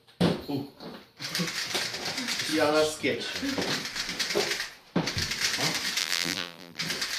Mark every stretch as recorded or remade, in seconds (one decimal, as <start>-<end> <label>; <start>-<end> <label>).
0.0-6.0 recorded; 6.0-6.8 remade; 6.8-7.2 recorded